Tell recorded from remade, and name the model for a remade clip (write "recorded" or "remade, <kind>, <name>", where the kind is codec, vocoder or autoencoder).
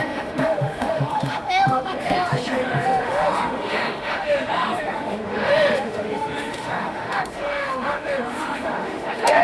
remade, autoencoder, DAC-VAE